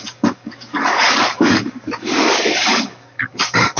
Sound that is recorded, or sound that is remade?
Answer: remade